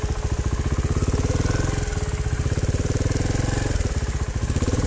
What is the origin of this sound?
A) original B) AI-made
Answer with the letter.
A